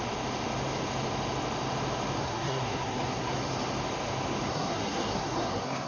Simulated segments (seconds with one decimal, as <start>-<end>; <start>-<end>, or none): 2.2-3.4; 4.5-5.9

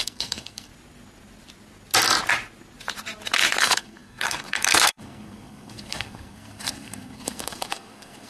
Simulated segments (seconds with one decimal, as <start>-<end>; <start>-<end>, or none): 0.0-0.7; 3.6-8.3